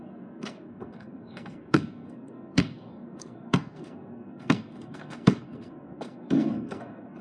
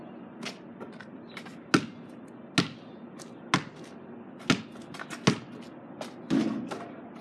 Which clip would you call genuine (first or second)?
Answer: second